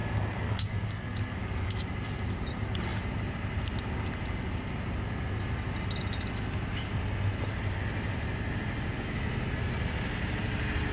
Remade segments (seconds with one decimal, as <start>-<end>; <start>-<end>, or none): 0.0-1.8